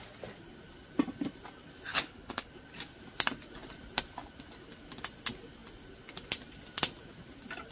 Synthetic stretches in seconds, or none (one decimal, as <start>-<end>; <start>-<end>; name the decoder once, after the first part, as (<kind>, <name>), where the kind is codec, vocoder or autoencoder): 1.9-2.5 (codec, HILCodec)